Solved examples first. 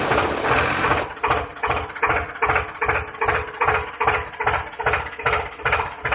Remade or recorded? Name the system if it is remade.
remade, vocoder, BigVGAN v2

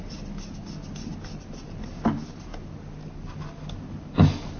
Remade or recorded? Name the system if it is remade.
recorded